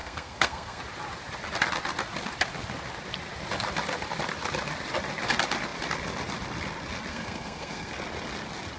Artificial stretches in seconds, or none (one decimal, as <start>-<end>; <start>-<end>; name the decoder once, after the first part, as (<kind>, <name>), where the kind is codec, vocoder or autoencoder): 0.0-0.8 (codec, SNAC); 7.1-7.9